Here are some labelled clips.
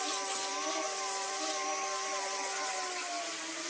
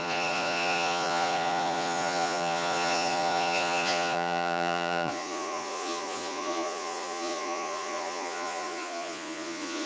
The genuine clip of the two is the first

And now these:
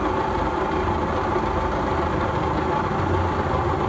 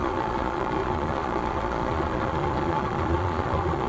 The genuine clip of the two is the first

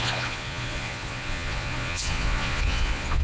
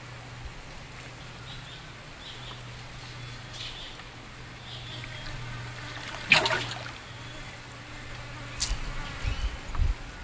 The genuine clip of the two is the second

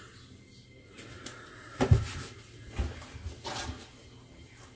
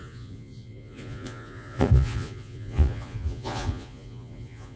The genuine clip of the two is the first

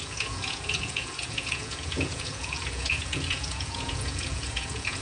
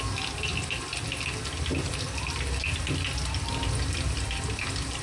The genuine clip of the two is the second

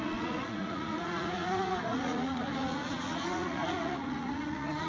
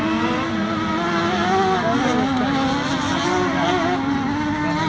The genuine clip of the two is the second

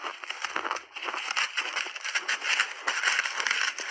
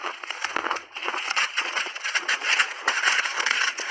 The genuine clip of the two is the first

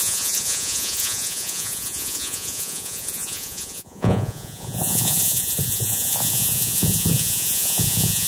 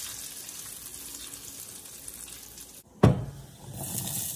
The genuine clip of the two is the second